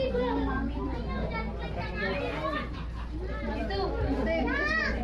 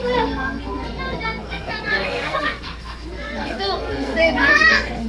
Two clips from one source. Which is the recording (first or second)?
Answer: first